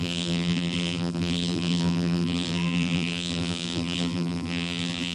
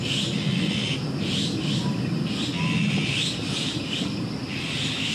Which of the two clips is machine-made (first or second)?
first